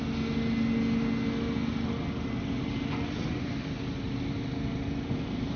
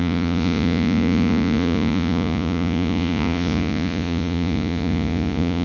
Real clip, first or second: first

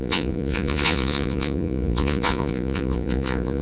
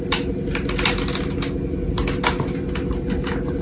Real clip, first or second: second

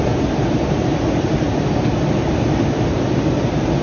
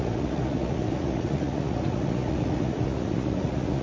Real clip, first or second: first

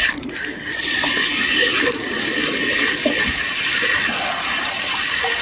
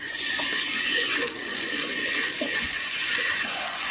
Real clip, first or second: first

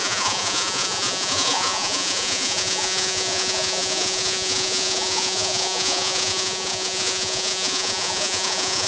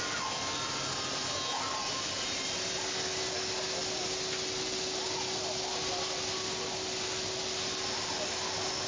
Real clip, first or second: second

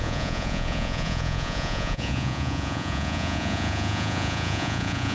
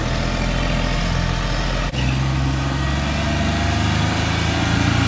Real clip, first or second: second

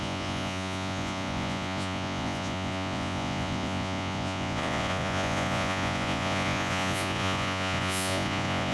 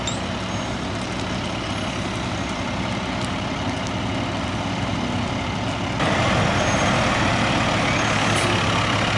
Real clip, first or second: second